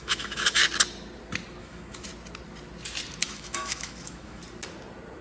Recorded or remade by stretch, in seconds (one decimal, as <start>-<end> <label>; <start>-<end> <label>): 0.0-0.6 remade; 0.6-1.6 recorded; 1.6-2.1 remade; 2.1-3.2 recorded; 3.2-4.4 remade; 4.4-5.2 recorded